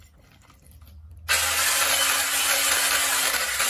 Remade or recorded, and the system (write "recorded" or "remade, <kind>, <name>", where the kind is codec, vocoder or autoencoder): recorded